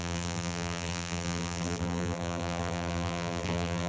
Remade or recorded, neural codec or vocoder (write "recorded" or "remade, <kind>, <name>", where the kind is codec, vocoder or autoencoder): remade, vocoder, BigVGAN v2